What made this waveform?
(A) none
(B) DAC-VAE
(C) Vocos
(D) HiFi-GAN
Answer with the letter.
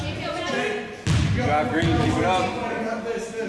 A